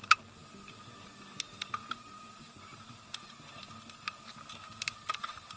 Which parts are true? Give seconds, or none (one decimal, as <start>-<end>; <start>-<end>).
0.0-5.6